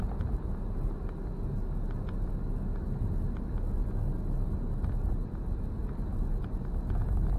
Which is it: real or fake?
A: real